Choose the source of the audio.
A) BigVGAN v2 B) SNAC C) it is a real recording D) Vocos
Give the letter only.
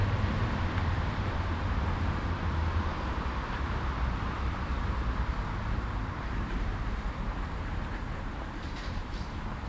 A